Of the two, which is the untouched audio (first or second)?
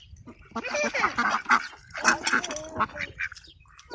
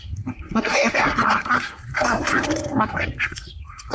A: first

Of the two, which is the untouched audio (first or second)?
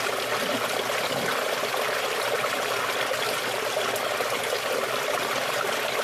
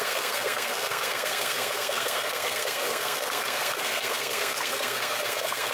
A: first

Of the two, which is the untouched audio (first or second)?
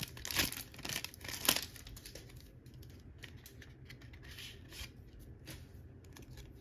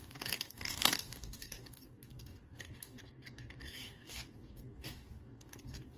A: first